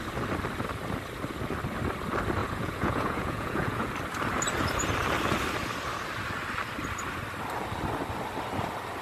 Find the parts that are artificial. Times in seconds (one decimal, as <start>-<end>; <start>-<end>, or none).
2.4-3.9